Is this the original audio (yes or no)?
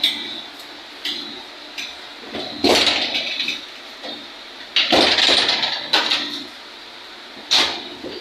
yes